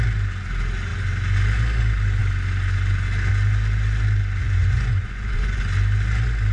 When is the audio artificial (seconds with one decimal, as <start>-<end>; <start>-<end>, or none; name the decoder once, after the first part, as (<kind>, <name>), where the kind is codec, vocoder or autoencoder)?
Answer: 4.4-5.6 (vocoder, Vocos)